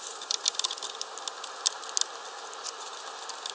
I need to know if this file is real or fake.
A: real